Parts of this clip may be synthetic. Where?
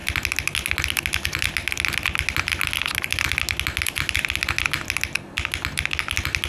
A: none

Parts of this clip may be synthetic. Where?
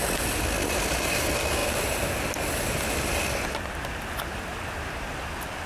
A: none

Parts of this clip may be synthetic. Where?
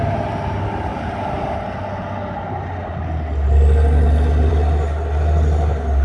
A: none